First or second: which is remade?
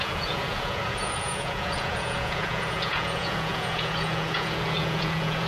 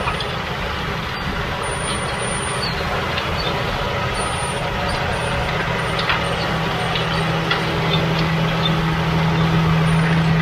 first